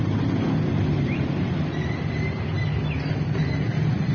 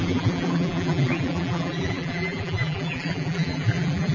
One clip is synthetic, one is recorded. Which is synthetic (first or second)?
second